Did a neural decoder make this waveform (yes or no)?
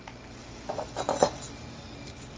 no